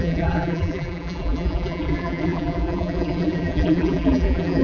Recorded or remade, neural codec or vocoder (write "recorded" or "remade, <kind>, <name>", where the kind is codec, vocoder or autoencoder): remade, vocoder, BigVGAN v2